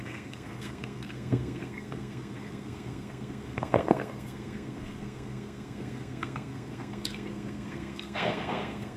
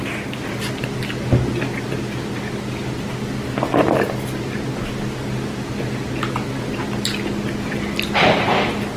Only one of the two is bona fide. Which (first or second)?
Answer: second